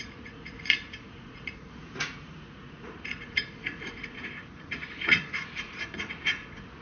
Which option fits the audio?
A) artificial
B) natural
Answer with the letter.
A